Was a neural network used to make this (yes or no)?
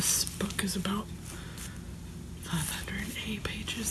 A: no